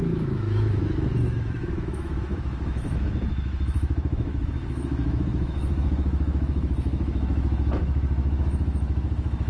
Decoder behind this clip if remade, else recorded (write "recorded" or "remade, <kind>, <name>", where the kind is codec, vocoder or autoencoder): remade, autoencoder, DAC-VAE